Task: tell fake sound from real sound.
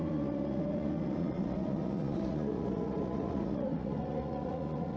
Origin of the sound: fake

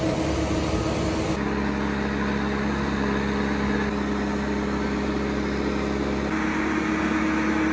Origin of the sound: real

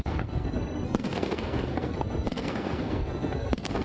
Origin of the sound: fake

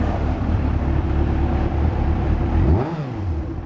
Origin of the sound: real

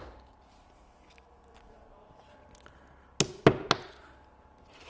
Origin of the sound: real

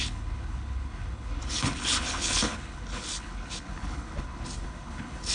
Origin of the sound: fake